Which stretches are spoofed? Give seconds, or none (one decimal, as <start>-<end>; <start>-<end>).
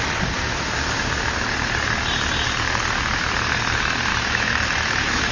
4.1-5.3